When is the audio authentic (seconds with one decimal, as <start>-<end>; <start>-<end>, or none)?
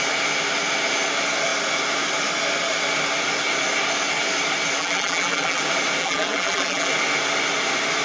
0.0-4.8; 5.6-6.0; 6.9-8.0